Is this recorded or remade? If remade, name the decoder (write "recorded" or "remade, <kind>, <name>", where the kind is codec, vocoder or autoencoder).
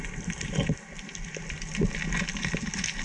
recorded